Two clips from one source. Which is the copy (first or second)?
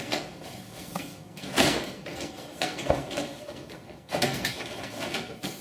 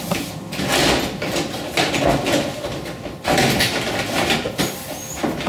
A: first